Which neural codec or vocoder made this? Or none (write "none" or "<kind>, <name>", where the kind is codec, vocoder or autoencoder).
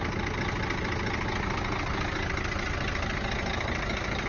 none